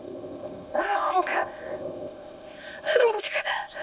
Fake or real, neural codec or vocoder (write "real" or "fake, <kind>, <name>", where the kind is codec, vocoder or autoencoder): fake, codec, ZipCodec